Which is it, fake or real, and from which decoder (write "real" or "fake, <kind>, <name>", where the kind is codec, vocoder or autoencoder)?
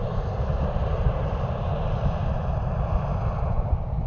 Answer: real